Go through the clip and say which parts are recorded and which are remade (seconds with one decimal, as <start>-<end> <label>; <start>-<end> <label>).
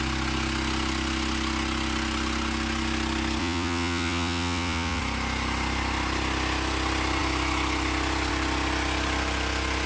0.0-3.4 recorded; 3.4-5.0 remade; 5.0-9.9 recorded